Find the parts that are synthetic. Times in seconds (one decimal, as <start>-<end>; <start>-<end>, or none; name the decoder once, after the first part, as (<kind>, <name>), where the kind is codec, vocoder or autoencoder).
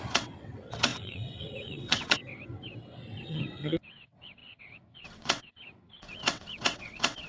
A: 0.0-7.3 (vocoder, WaveNeXt)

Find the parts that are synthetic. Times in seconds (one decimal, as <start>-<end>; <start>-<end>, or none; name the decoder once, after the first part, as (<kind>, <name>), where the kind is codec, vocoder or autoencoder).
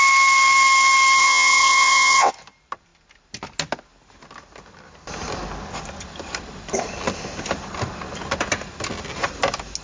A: 1.2-2.3 (vocoder, WaveNeXt)